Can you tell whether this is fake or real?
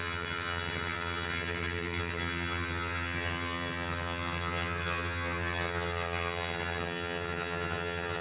fake